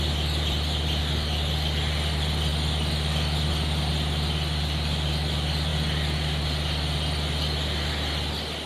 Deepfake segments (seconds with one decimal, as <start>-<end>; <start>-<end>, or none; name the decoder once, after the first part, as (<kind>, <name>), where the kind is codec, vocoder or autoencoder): none